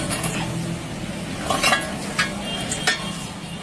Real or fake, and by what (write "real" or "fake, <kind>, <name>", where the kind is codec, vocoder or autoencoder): real